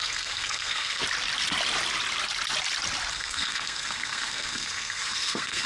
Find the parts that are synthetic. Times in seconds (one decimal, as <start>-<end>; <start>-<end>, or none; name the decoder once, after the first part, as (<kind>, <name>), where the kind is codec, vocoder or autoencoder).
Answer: 0.0-1.0 (codec, SNAC); 3.1-5.7